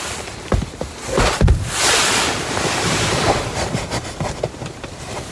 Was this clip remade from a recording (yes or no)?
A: no